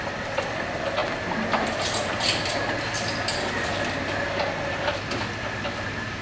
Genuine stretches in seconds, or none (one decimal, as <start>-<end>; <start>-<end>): 0.0-6.2